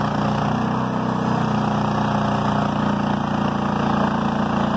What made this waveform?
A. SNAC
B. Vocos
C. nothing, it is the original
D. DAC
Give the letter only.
C